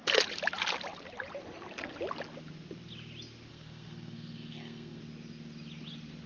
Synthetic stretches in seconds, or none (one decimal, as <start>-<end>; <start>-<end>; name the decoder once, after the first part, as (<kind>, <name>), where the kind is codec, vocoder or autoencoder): 3.5-5.0 (codec, SNAC)